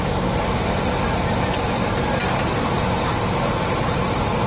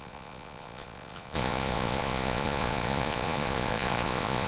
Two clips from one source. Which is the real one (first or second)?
first